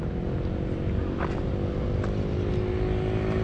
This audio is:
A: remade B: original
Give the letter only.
B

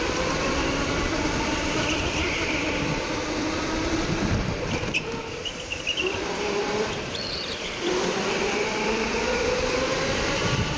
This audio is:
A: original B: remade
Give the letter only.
B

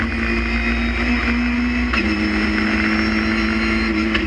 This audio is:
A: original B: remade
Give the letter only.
A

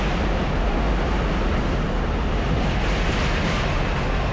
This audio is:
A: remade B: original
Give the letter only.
B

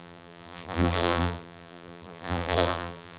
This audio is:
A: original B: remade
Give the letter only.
B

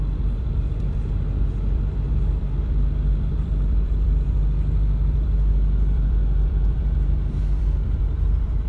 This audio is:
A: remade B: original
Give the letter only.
A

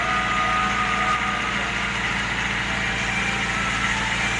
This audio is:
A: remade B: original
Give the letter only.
B